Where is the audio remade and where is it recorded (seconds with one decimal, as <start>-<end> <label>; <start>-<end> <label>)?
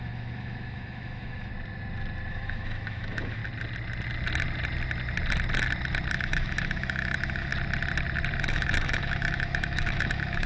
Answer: 0.0-1.5 remade; 1.5-2.3 recorded; 2.3-3.4 remade; 3.4-6.1 recorded; 6.1-7.5 remade; 7.5-8.4 recorded; 8.4-10.5 remade